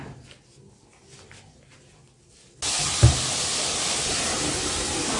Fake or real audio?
real